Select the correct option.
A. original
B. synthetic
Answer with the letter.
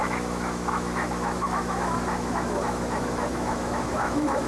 B